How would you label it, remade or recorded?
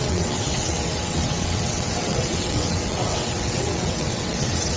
remade